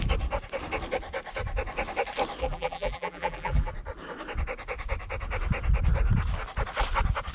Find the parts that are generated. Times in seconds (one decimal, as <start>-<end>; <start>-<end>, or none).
2.4-3.7

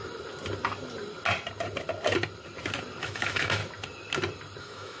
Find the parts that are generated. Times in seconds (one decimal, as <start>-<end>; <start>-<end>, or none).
3.0-3.6; 4.6-5.0

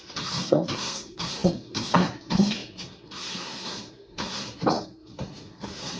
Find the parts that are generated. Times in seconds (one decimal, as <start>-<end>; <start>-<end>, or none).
0.0-6.0

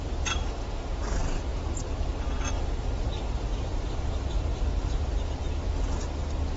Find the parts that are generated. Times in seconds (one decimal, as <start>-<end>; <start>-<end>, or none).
3.7-5.7

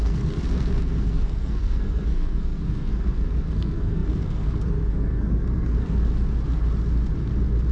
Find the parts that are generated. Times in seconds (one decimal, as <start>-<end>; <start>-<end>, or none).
0.0-6.1